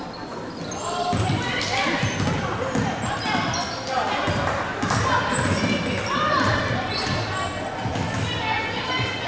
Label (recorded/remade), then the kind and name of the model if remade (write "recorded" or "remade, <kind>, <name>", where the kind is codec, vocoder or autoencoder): recorded